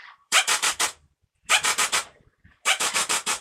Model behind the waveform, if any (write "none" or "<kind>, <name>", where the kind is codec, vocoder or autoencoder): vocoder, BigVGAN v2